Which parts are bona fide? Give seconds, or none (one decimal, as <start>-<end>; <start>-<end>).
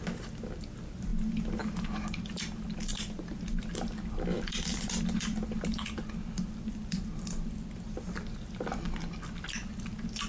0.0-2.9; 3.7-4.7; 8.9-10.3